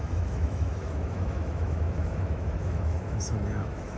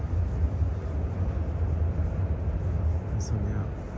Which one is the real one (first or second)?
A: second